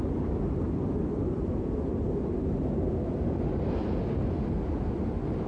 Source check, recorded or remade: recorded